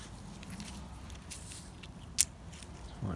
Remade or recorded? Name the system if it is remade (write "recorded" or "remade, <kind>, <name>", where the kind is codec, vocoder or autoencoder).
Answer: recorded